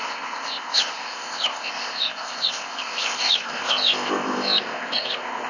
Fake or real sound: fake